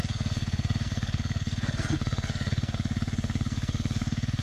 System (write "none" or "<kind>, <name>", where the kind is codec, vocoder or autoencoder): codec, SNAC